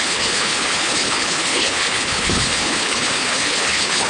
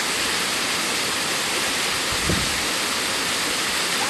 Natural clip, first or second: second